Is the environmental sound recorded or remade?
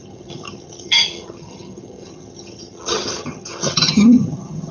remade